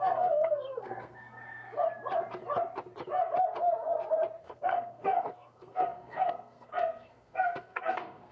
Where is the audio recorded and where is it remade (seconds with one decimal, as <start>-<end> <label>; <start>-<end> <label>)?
0.0-1.4 remade; 1.4-4.4 recorded; 4.4-8.3 remade